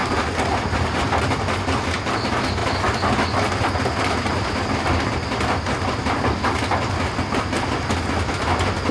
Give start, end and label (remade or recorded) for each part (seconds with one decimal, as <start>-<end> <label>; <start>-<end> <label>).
0.0-1.0 remade; 1.0-8.9 recorded